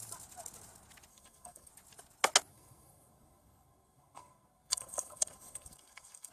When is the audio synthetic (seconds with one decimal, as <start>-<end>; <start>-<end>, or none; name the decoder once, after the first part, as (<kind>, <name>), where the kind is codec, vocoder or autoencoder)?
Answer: 1.1-1.7 (codec, SNAC); 2.5-6.3